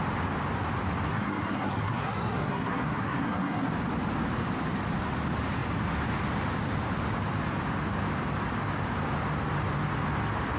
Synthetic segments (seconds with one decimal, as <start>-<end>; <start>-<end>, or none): 1.1-3.7